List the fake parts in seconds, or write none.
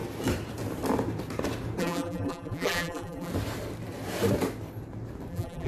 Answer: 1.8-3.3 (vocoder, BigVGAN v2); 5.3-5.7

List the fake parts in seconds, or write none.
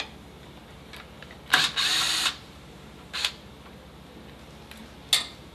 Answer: 1.9-3.3 (vocoder, BigVGAN v2)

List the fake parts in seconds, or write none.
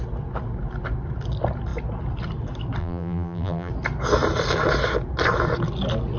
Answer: 2.8-3.7 (vocoder, BigVGAN v2)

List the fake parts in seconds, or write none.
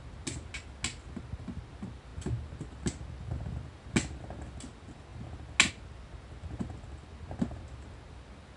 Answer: none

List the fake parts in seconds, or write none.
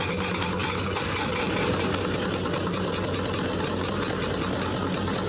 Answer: none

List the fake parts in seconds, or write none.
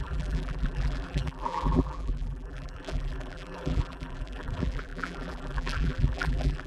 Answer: 0.0-6.7 (vocoder, BigVGAN v2)